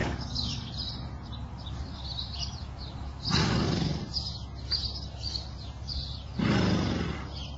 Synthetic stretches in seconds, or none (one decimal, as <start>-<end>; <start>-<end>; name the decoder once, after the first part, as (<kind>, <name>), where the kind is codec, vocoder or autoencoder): 0.0-0.7 (codec, DAC); 3.4-4.0